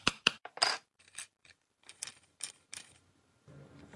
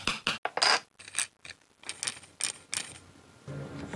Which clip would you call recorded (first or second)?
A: second